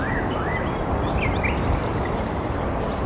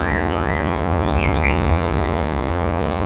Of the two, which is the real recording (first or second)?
first